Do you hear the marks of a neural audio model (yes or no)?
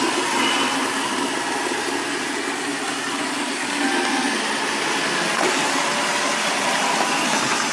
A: no